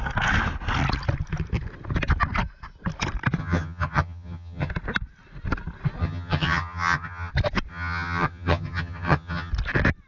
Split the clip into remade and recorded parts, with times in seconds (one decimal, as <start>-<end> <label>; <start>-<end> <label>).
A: 0.0-3.4 recorded; 3.4-4.7 remade; 4.7-6.0 recorded; 6.0-7.3 remade; 7.3-7.7 recorded; 7.7-9.5 remade; 9.5-10.1 recorded